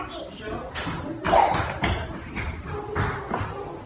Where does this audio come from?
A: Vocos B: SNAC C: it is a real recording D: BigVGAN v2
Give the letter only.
C